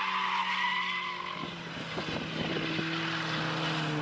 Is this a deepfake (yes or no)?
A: no